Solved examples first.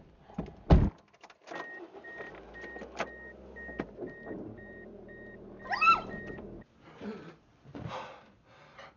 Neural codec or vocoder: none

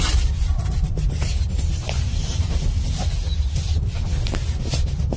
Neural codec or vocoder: vocoder, BigVGAN v2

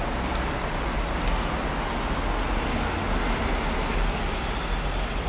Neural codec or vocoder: none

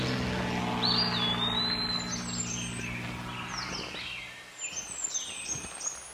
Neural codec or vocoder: none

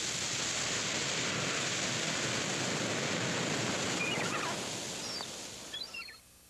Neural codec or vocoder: none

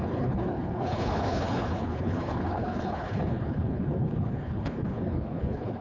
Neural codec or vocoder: codec, HILCodec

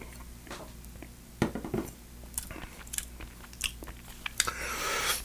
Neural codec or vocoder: none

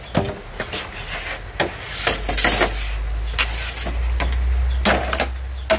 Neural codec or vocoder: none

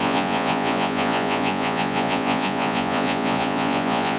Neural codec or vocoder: vocoder, Vocos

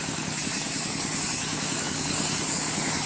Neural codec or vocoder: codec, DAC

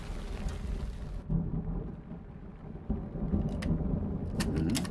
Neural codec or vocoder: none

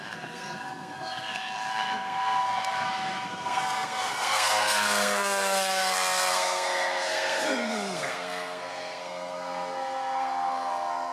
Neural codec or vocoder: codec, SNAC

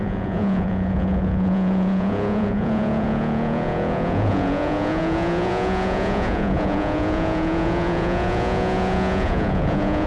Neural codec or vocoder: vocoder, Vocos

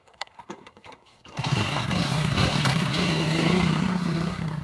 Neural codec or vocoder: codec, SNAC